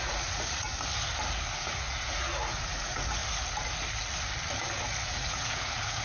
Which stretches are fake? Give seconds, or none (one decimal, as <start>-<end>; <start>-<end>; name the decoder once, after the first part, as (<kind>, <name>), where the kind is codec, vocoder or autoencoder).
0.0-0.7 (vocoder, Vocos); 1.5-3.2; 5.0-6.0